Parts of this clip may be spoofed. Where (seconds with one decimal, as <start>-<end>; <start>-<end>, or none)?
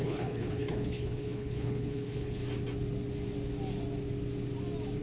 0.0-2.4